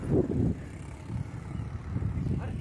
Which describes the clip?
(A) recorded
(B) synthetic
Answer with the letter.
A